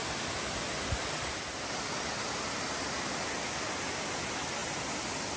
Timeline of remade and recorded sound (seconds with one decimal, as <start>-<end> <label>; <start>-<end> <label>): 0.0-5.4 recorded